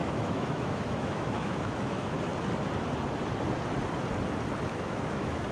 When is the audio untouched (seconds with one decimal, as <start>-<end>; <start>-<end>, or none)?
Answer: 2.3-4.7

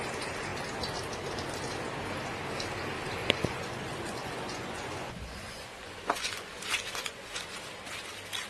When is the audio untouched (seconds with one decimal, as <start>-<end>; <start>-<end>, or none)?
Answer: 0.0-3.2; 7.6-8.5

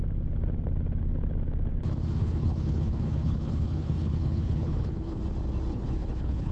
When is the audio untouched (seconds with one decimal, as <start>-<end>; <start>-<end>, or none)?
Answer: 0.0-2.2; 5.2-5.7